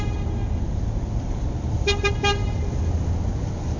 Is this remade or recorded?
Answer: recorded